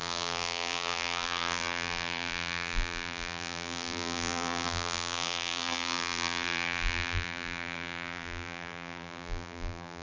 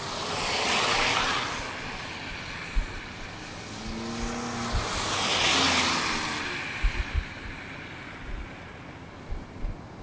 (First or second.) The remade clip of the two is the first